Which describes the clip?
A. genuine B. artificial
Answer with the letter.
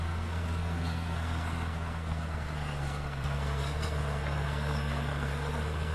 B